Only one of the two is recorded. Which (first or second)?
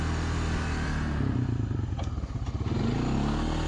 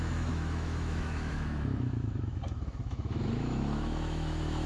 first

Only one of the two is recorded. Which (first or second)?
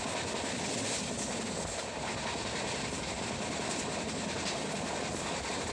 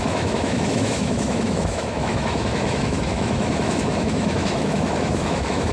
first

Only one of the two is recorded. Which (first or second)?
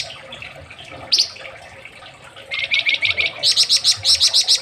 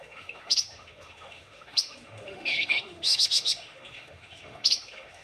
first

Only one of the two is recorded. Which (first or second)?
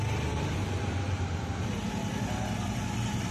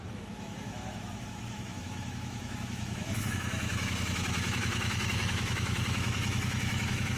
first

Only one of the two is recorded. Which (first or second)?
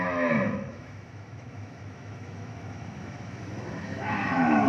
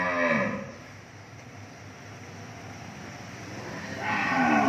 second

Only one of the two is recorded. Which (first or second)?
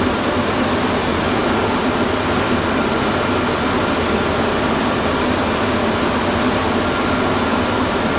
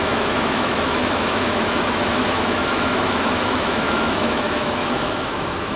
first